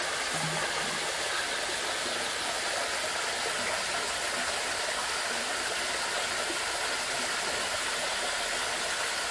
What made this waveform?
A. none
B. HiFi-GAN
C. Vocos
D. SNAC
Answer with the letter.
A